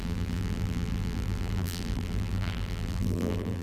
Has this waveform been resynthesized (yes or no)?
yes